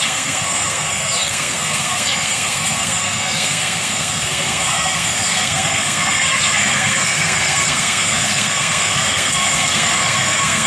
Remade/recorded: remade